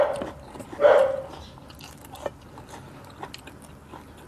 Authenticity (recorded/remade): recorded